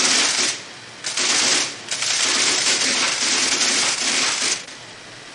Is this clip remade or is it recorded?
recorded